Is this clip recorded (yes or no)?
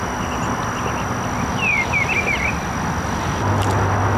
yes